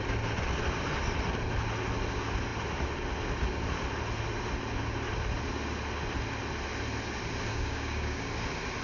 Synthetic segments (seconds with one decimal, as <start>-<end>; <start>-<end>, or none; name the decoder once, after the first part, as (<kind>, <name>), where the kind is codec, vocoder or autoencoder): 7.5-8.3 (codec, DAC)